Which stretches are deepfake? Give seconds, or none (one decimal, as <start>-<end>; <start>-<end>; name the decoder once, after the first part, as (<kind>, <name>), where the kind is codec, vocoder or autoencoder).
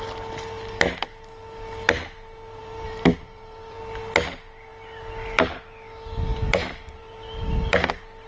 2.6-3.8 (vocoder, BigVGAN v2); 6.3-7.9